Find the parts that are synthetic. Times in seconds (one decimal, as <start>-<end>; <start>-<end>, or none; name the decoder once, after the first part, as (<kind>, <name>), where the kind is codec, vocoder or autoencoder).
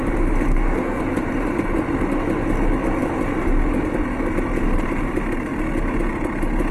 0.5-1.0 (codec, SNAC)